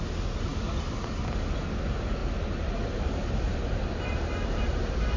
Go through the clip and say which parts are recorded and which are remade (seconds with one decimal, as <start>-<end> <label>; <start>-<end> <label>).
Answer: 0.0-2.2 recorded; 2.2-5.2 remade